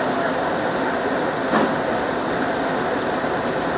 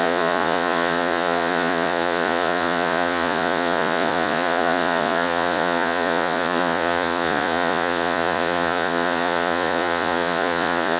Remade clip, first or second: second